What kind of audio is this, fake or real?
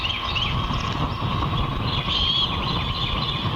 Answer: real